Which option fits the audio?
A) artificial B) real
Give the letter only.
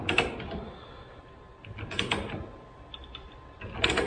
B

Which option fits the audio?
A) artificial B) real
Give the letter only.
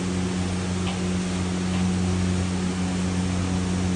B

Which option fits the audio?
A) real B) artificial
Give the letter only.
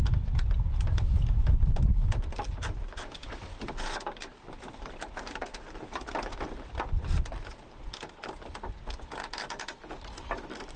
A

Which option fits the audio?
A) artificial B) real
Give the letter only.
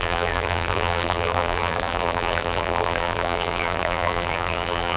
A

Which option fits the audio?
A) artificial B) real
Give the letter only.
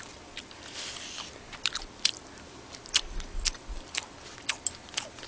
B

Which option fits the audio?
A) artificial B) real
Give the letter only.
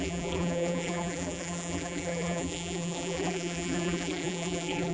A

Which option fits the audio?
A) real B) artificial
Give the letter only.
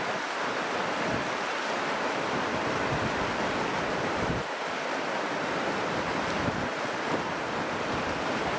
B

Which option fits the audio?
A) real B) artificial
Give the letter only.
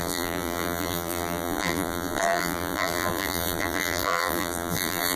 B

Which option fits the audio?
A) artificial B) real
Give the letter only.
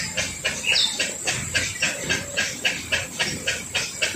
B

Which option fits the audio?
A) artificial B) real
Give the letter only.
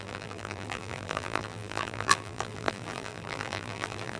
A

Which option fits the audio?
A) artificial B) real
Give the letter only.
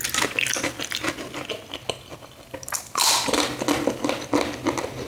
B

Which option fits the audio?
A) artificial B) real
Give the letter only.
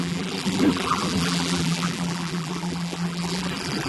A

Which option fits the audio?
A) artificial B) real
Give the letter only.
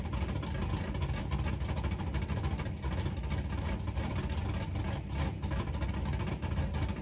A